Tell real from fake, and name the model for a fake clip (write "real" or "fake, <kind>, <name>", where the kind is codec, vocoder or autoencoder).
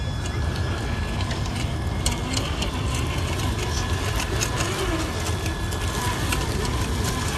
real